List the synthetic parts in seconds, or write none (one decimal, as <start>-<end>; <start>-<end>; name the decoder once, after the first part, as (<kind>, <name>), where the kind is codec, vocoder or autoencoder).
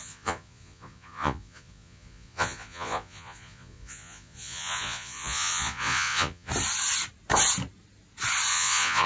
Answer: 0.0-6.5 (vocoder, Vocos); 8.5-9.1